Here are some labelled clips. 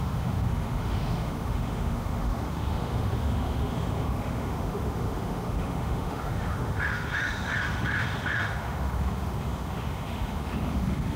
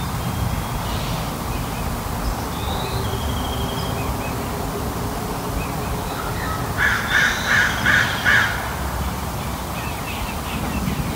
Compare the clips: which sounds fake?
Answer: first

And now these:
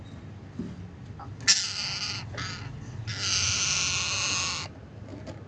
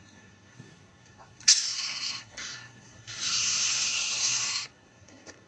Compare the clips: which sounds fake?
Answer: second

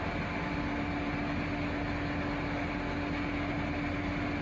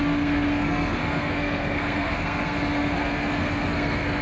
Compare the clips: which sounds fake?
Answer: second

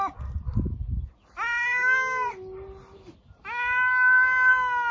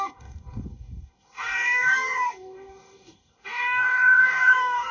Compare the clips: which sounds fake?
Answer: second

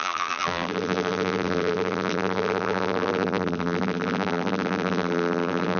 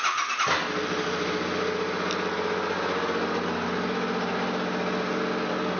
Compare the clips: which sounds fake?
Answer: first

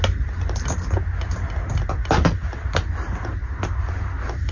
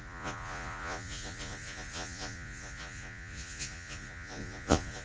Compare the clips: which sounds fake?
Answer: second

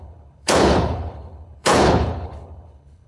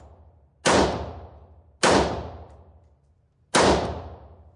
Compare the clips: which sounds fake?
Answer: first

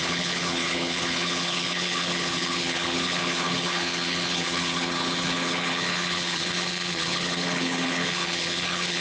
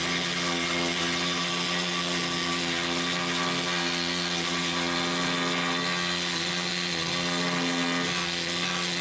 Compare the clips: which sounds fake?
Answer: first